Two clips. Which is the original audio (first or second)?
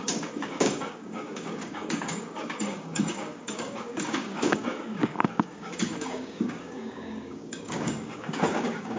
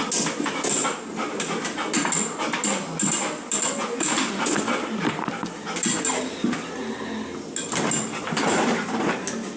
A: second